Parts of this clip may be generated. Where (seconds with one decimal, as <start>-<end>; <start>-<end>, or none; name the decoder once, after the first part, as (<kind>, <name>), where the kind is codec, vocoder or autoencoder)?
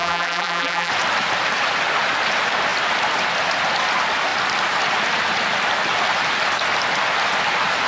0.0-0.9 (vocoder, BigVGAN v2)